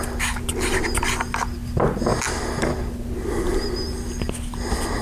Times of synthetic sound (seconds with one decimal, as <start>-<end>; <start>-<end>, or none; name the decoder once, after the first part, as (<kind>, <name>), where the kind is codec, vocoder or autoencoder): none

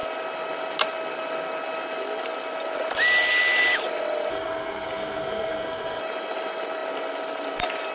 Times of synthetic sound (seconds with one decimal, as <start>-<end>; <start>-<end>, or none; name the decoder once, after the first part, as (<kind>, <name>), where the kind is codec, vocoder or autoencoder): 4.3-6.0 (codec, SNAC)

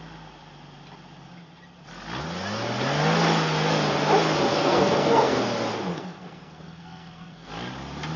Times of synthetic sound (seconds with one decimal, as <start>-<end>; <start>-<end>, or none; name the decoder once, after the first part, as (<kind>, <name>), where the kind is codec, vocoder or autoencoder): 4.5-5.4 (codec, SNAC); 5.9-7.5

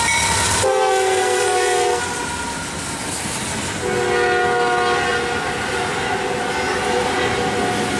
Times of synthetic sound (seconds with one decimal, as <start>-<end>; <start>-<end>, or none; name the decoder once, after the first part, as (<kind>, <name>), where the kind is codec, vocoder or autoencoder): 0.7-2.0 (codec, SNAC)

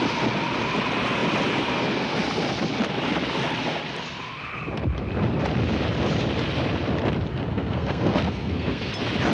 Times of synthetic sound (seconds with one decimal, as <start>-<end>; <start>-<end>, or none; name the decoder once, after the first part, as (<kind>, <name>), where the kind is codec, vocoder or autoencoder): 7.5-8.9 (codec, SNAC)